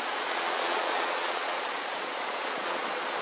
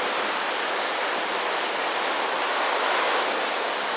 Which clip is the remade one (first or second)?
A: first